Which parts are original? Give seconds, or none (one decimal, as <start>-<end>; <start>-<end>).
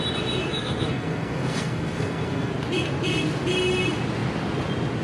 0.0-0.5; 2.5-5.0